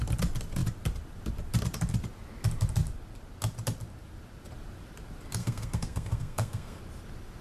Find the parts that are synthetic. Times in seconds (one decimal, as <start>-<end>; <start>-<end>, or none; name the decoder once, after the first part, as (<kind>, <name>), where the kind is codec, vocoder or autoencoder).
5.4-6.8 (codec, SNAC)